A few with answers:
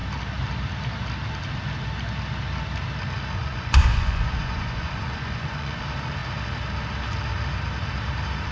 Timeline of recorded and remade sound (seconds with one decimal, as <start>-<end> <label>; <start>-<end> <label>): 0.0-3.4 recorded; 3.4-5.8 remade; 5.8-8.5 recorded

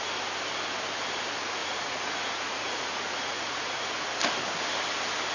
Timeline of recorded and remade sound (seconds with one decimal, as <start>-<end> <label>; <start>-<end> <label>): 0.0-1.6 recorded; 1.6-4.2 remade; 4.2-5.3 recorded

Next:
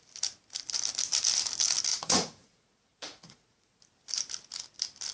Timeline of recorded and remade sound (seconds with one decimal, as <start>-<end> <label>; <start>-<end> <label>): 0.0-1.9 recorded; 1.9-3.8 remade; 3.8-5.1 recorded

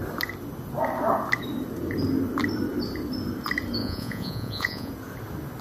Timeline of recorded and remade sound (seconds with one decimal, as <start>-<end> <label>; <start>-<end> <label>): 0.0-3.8 recorded; 3.8-4.9 remade; 4.9-5.6 recorded